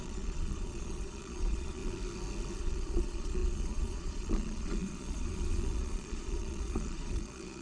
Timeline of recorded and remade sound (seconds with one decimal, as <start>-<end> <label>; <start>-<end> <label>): 0.0-1.8 remade; 1.8-2.6 recorded; 2.6-7.6 remade